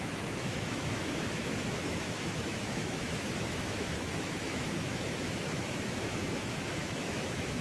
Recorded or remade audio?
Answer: remade